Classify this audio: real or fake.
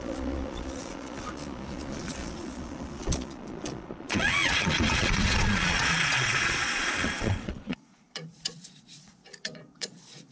fake